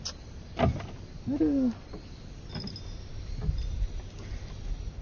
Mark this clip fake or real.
real